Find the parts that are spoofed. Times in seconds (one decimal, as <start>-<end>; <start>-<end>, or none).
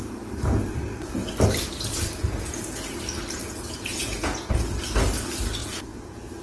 3.4-4.8; 5.6-6.4